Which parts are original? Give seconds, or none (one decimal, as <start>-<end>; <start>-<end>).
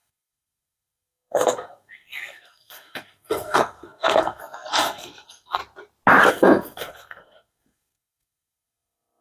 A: 5.6-6.3